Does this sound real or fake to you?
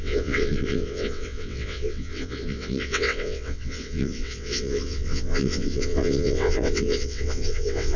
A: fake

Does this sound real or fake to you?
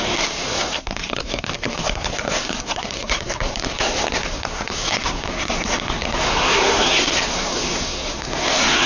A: fake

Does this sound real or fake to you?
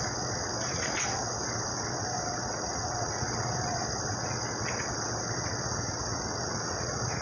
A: fake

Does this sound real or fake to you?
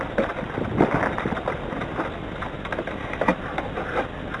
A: real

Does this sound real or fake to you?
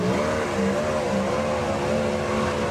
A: real